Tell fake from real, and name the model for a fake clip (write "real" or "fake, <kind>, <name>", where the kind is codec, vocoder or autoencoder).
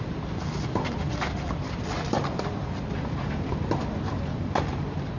fake, vocoder, BigVGAN v2